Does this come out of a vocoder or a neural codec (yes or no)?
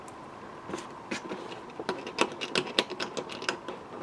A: no